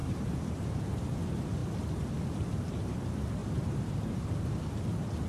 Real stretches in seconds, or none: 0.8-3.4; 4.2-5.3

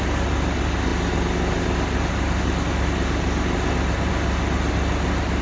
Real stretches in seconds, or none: 0.0-5.4

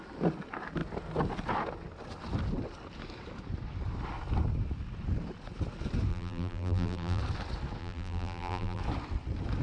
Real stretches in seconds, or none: 0.0-6.1; 7.2-7.8; 8.8-9.6

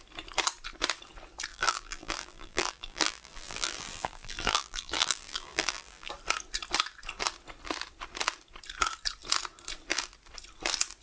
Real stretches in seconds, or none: 0.0-1.5; 6.1-11.0

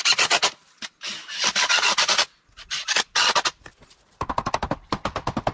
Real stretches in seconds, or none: 0.0-0.9; 1.9-5.5

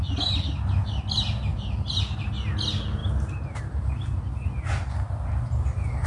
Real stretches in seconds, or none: 0.0-1.5; 2.3-3.0; 3.6-6.1

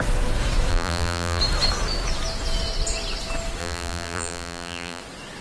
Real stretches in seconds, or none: 0.0-0.7; 1.4-3.6; 5.0-5.4